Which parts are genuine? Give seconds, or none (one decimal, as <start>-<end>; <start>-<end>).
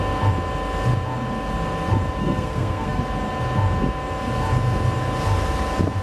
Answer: 0.0-2.2; 3.0-6.0